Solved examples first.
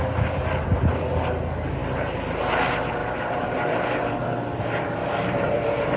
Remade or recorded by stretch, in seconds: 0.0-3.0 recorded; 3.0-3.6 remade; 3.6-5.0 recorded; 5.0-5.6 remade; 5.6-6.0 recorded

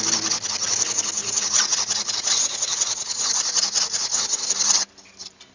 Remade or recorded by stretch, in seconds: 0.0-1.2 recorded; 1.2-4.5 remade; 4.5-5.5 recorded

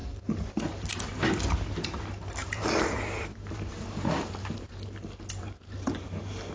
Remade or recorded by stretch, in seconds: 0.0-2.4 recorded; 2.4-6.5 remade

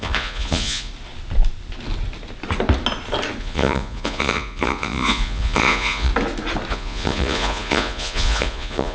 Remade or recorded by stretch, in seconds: 0.0-0.9 remade; 0.9-3.4 recorded; 3.4-6.1 remade; 6.1-6.7 recorded; 6.7-8.9 remade

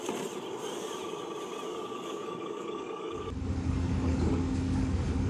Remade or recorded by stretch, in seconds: 0.0-1.7 recorded; 1.7-5.3 remade